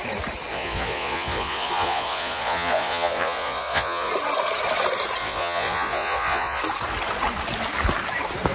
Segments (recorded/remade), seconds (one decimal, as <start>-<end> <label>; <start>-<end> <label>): 0.0-0.5 recorded; 0.5-4.1 remade; 4.1-5.2 recorded; 5.2-6.6 remade; 6.6-8.5 recorded